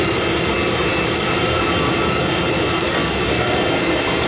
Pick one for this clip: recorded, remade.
recorded